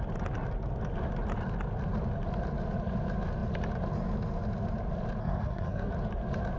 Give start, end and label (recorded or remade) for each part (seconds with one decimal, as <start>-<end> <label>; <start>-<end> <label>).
0.0-5.2 recorded; 5.2-5.9 remade; 5.9-6.6 recorded